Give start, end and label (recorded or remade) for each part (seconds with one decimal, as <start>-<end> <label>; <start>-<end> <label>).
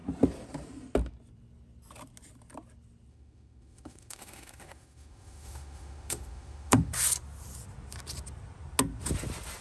0.0-3.1 recorded; 3.1-6.9 remade; 6.9-9.6 recorded